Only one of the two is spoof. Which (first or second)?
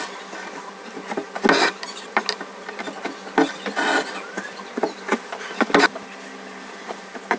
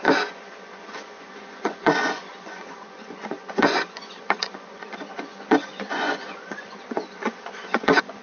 second